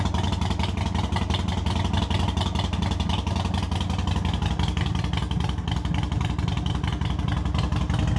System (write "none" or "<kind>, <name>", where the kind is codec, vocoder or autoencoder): none